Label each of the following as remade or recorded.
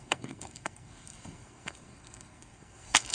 remade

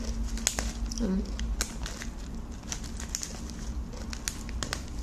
recorded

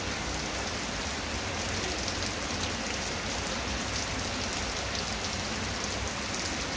recorded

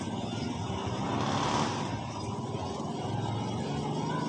recorded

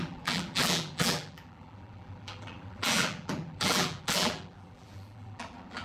remade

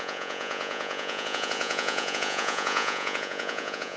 remade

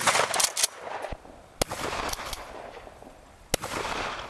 recorded